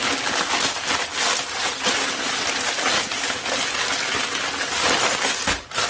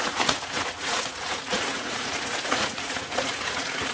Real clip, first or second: first